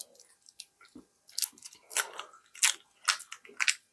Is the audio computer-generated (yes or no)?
no